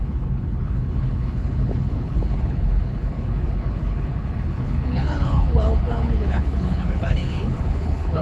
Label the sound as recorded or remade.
remade